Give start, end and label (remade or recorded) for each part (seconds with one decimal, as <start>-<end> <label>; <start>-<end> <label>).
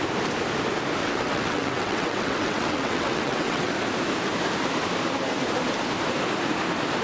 0.0-1.0 recorded; 1.0-3.7 remade; 3.7-7.0 recorded